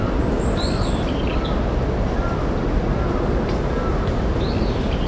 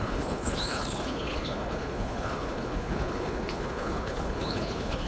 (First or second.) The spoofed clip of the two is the second